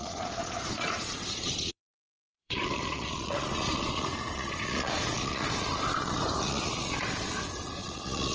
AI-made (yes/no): yes